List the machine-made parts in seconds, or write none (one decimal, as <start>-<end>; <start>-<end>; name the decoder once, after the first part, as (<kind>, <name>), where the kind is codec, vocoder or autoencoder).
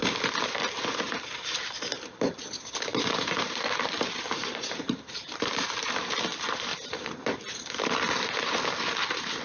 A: 2.9-6.1 (vocoder, BigVGAN v2); 6.7-7.3